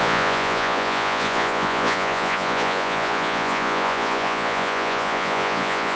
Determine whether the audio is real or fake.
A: fake